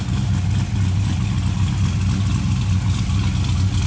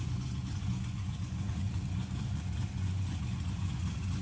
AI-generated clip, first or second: second